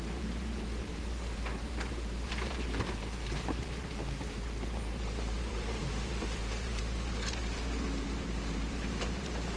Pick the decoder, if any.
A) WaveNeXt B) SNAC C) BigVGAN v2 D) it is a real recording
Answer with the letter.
C